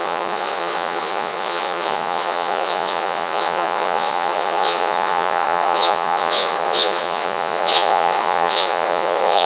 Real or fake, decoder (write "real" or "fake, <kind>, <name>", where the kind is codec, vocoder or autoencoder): fake, vocoder, Vocos